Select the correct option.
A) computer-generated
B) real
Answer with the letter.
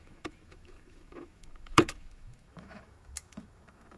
A